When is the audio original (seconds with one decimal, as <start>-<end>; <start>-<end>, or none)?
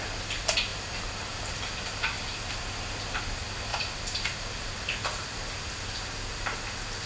0.0-0.7; 3.2-3.7; 5.7-7.1